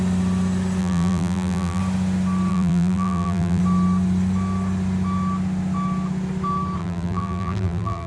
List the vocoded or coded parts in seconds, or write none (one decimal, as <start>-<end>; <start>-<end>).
0.8-1.8; 2.5-3.6; 6.8-8.1